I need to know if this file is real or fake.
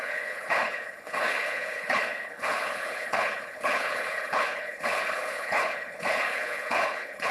fake